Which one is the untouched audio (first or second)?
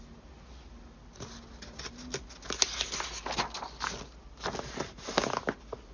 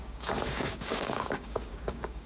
first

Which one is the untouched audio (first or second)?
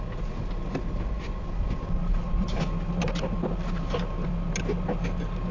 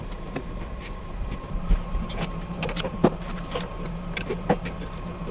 first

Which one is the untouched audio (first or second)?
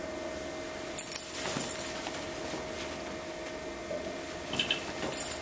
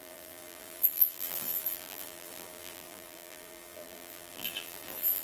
first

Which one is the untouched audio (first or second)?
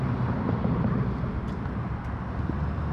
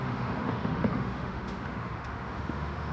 first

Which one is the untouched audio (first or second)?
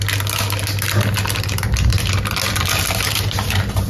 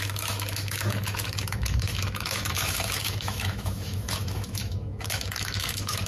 first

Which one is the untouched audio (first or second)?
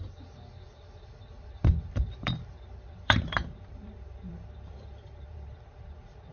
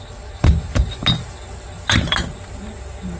second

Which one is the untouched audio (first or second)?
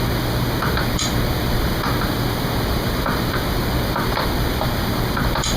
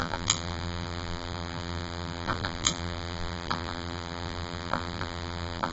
first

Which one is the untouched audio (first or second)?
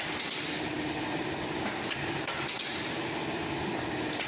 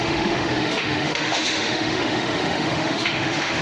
first